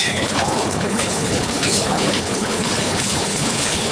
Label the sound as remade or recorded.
remade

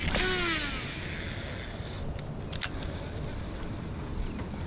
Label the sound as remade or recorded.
recorded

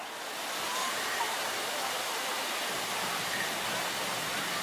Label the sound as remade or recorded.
recorded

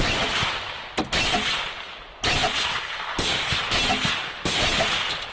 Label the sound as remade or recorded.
recorded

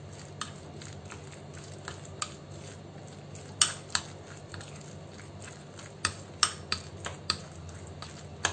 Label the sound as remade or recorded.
recorded